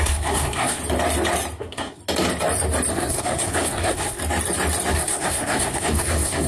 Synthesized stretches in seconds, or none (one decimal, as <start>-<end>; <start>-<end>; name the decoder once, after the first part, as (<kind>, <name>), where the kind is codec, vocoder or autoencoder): 0.0-0.8 (codec, SNAC); 1.6-2.0; 2.9-4.2; 4.9-6.5